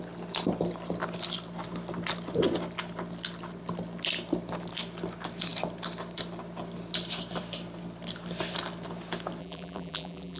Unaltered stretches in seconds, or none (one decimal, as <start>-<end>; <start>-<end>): 0.0-9.4